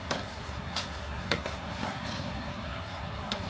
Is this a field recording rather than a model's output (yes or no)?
no